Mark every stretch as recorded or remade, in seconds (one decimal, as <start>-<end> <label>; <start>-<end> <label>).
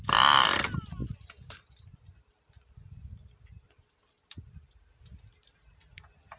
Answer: 0.0-6.4 recorded